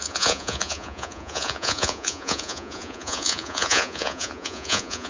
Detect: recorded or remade remade